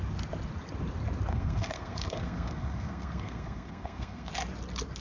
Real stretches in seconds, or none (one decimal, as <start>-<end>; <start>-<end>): 0.0-1.3; 4.3-5.0